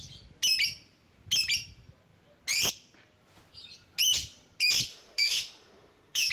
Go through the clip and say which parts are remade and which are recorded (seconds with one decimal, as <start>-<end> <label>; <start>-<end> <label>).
0.0-4.9 recorded; 4.9-6.3 remade